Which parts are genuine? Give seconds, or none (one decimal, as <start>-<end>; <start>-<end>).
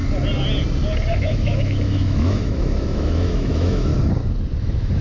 0.0-1.2; 3.9-4.6